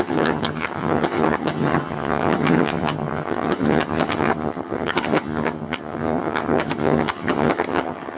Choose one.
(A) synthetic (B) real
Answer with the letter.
A